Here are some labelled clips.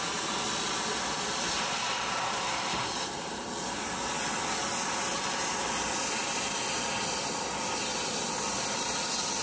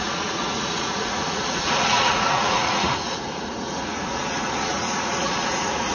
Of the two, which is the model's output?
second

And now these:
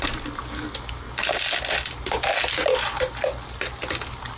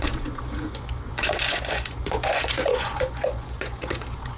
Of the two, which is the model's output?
second